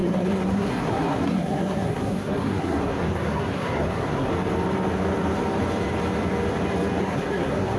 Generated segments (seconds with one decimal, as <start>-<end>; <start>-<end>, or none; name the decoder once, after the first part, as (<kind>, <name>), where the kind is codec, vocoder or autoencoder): 0.0-4.3 (codec, SNAC); 7.0-7.8